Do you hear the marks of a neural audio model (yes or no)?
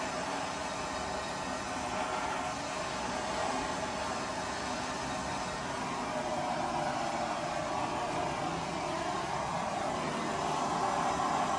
no